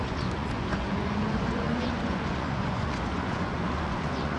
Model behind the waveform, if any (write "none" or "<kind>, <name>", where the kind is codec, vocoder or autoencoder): vocoder, Vocos